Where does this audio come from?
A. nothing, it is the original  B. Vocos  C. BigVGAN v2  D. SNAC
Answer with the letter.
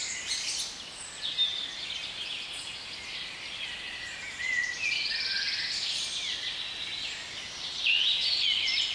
A